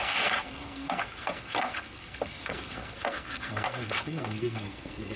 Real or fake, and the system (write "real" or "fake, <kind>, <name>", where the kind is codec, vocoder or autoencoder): fake, codec, SNAC